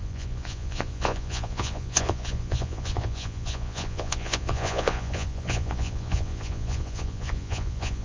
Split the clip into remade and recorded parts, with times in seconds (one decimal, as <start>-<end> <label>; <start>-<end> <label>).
0.0-8.0 remade